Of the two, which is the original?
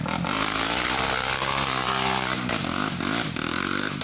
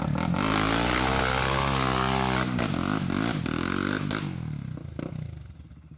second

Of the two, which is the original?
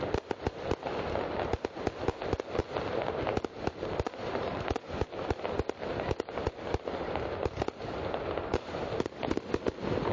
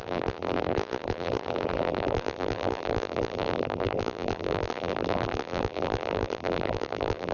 first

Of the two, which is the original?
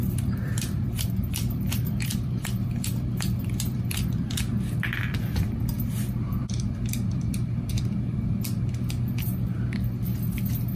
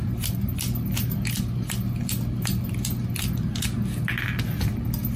second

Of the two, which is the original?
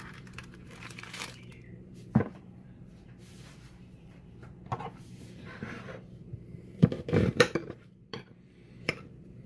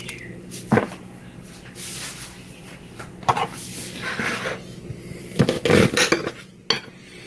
second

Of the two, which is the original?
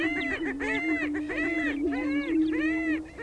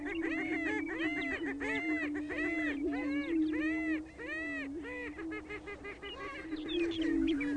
second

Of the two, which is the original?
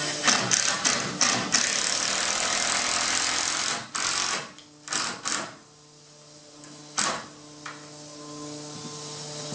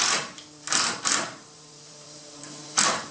first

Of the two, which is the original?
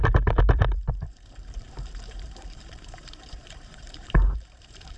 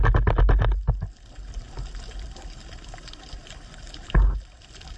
second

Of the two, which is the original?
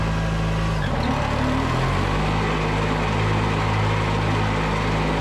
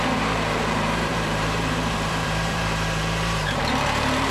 first